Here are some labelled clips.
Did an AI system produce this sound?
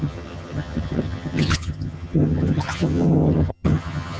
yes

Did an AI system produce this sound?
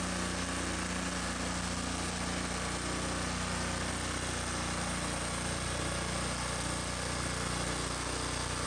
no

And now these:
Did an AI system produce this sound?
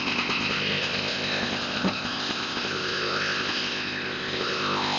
yes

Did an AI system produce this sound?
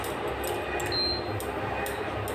no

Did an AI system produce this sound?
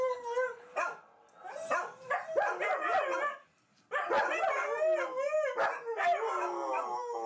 no